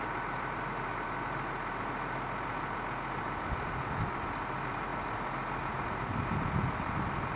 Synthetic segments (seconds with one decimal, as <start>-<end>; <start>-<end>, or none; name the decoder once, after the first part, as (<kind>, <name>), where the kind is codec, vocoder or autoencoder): none